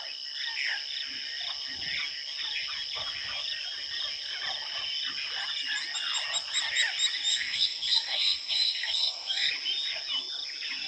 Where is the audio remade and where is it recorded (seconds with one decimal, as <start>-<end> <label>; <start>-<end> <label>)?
0.0-7.3 recorded; 7.3-9.5 remade; 9.5-10.9 recorded